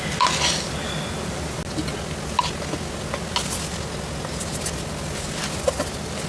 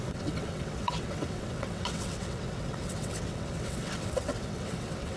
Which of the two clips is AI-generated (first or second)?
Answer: second